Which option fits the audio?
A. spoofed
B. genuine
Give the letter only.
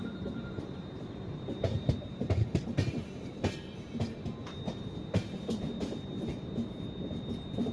A